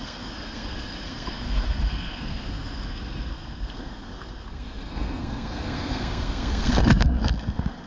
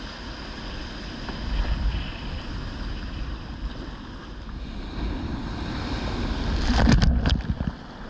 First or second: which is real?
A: second